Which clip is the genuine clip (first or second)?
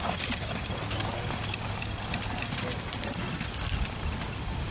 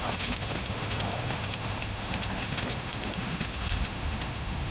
first